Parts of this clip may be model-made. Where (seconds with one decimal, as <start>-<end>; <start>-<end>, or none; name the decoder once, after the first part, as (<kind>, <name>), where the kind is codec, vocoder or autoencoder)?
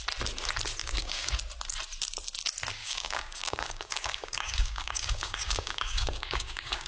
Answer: 0.8-1.3 (codec, DAC); 2.8-6.9